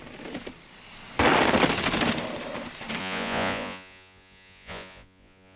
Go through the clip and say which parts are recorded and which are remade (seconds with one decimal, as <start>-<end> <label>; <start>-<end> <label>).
0.0-3.0 recorded; 3.0-5.6 remade